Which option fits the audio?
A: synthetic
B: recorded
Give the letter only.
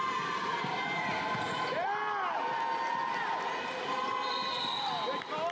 B